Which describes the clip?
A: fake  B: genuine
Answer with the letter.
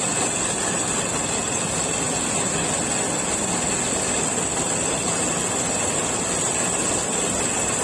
B